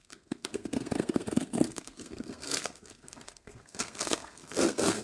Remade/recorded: remade